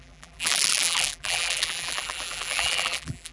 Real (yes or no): no